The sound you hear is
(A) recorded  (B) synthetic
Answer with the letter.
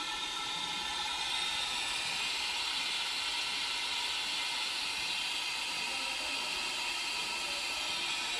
A